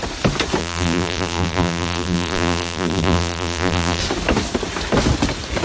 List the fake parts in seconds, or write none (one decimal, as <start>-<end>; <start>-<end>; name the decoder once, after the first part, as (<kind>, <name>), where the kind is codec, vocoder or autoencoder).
0.6-4.0 (vocoder, BigVGAN v2)